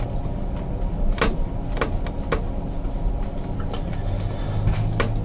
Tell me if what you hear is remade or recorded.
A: recorded